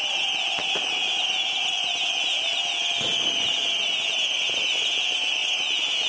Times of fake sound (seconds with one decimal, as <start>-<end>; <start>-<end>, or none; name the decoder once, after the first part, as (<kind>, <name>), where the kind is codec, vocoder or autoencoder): none